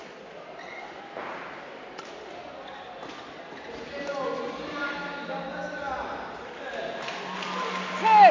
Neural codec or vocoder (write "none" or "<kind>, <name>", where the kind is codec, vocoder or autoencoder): none